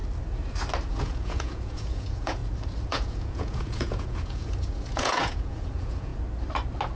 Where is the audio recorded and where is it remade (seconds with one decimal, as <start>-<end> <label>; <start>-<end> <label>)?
0.0-0.9 recorded; 0.9-2.4 remade; 2.4-2.9 recorded; 2.9-6.1 remade; 6.1-7.0 recorded